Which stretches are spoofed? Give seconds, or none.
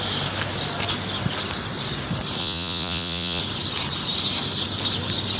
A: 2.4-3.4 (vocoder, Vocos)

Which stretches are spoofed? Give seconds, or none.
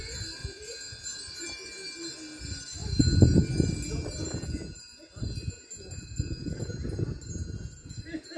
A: none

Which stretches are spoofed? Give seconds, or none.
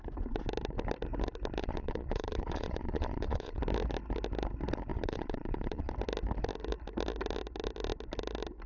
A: 1.6-3.6 (vocoder, Vocos); 4.9-5.9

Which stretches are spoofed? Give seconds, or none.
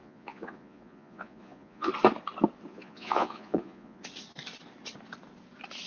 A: 0.0-1.9 (vocoder, Vocos); 2.7-4.0